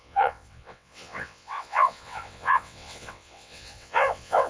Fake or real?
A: fake